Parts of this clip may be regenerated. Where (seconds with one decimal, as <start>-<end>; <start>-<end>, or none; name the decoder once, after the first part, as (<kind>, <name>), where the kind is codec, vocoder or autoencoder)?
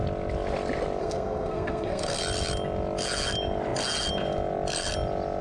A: 1.0-2.2 (codec, SNAC)